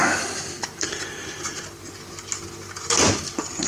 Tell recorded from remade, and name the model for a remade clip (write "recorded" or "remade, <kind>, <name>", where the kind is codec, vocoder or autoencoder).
recorded